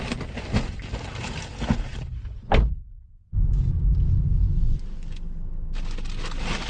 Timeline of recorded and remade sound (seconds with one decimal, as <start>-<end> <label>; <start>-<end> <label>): 0.0-6.7 recorded